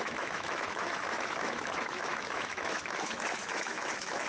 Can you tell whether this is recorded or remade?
remade